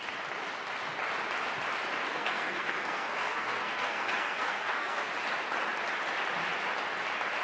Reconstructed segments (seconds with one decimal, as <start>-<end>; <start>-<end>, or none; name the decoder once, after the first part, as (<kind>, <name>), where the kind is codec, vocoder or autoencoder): 2.1-5.1 (codec, SNAC)